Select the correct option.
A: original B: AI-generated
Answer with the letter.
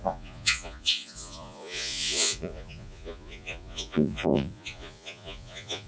B